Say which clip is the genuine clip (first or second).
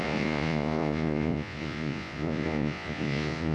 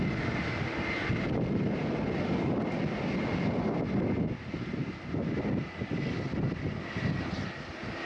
second